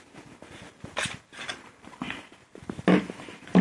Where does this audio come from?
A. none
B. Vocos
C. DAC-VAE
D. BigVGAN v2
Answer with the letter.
A